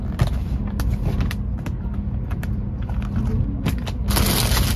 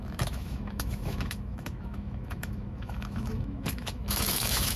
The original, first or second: first